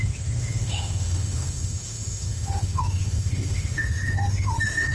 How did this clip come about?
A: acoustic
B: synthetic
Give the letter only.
B